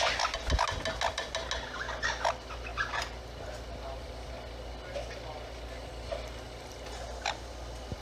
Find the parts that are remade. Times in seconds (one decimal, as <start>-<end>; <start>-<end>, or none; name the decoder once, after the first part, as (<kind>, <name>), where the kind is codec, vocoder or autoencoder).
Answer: none